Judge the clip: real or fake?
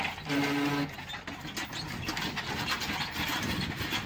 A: real